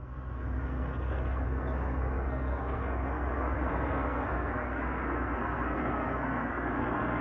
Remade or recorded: remade